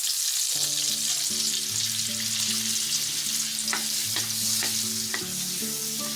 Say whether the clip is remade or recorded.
recorded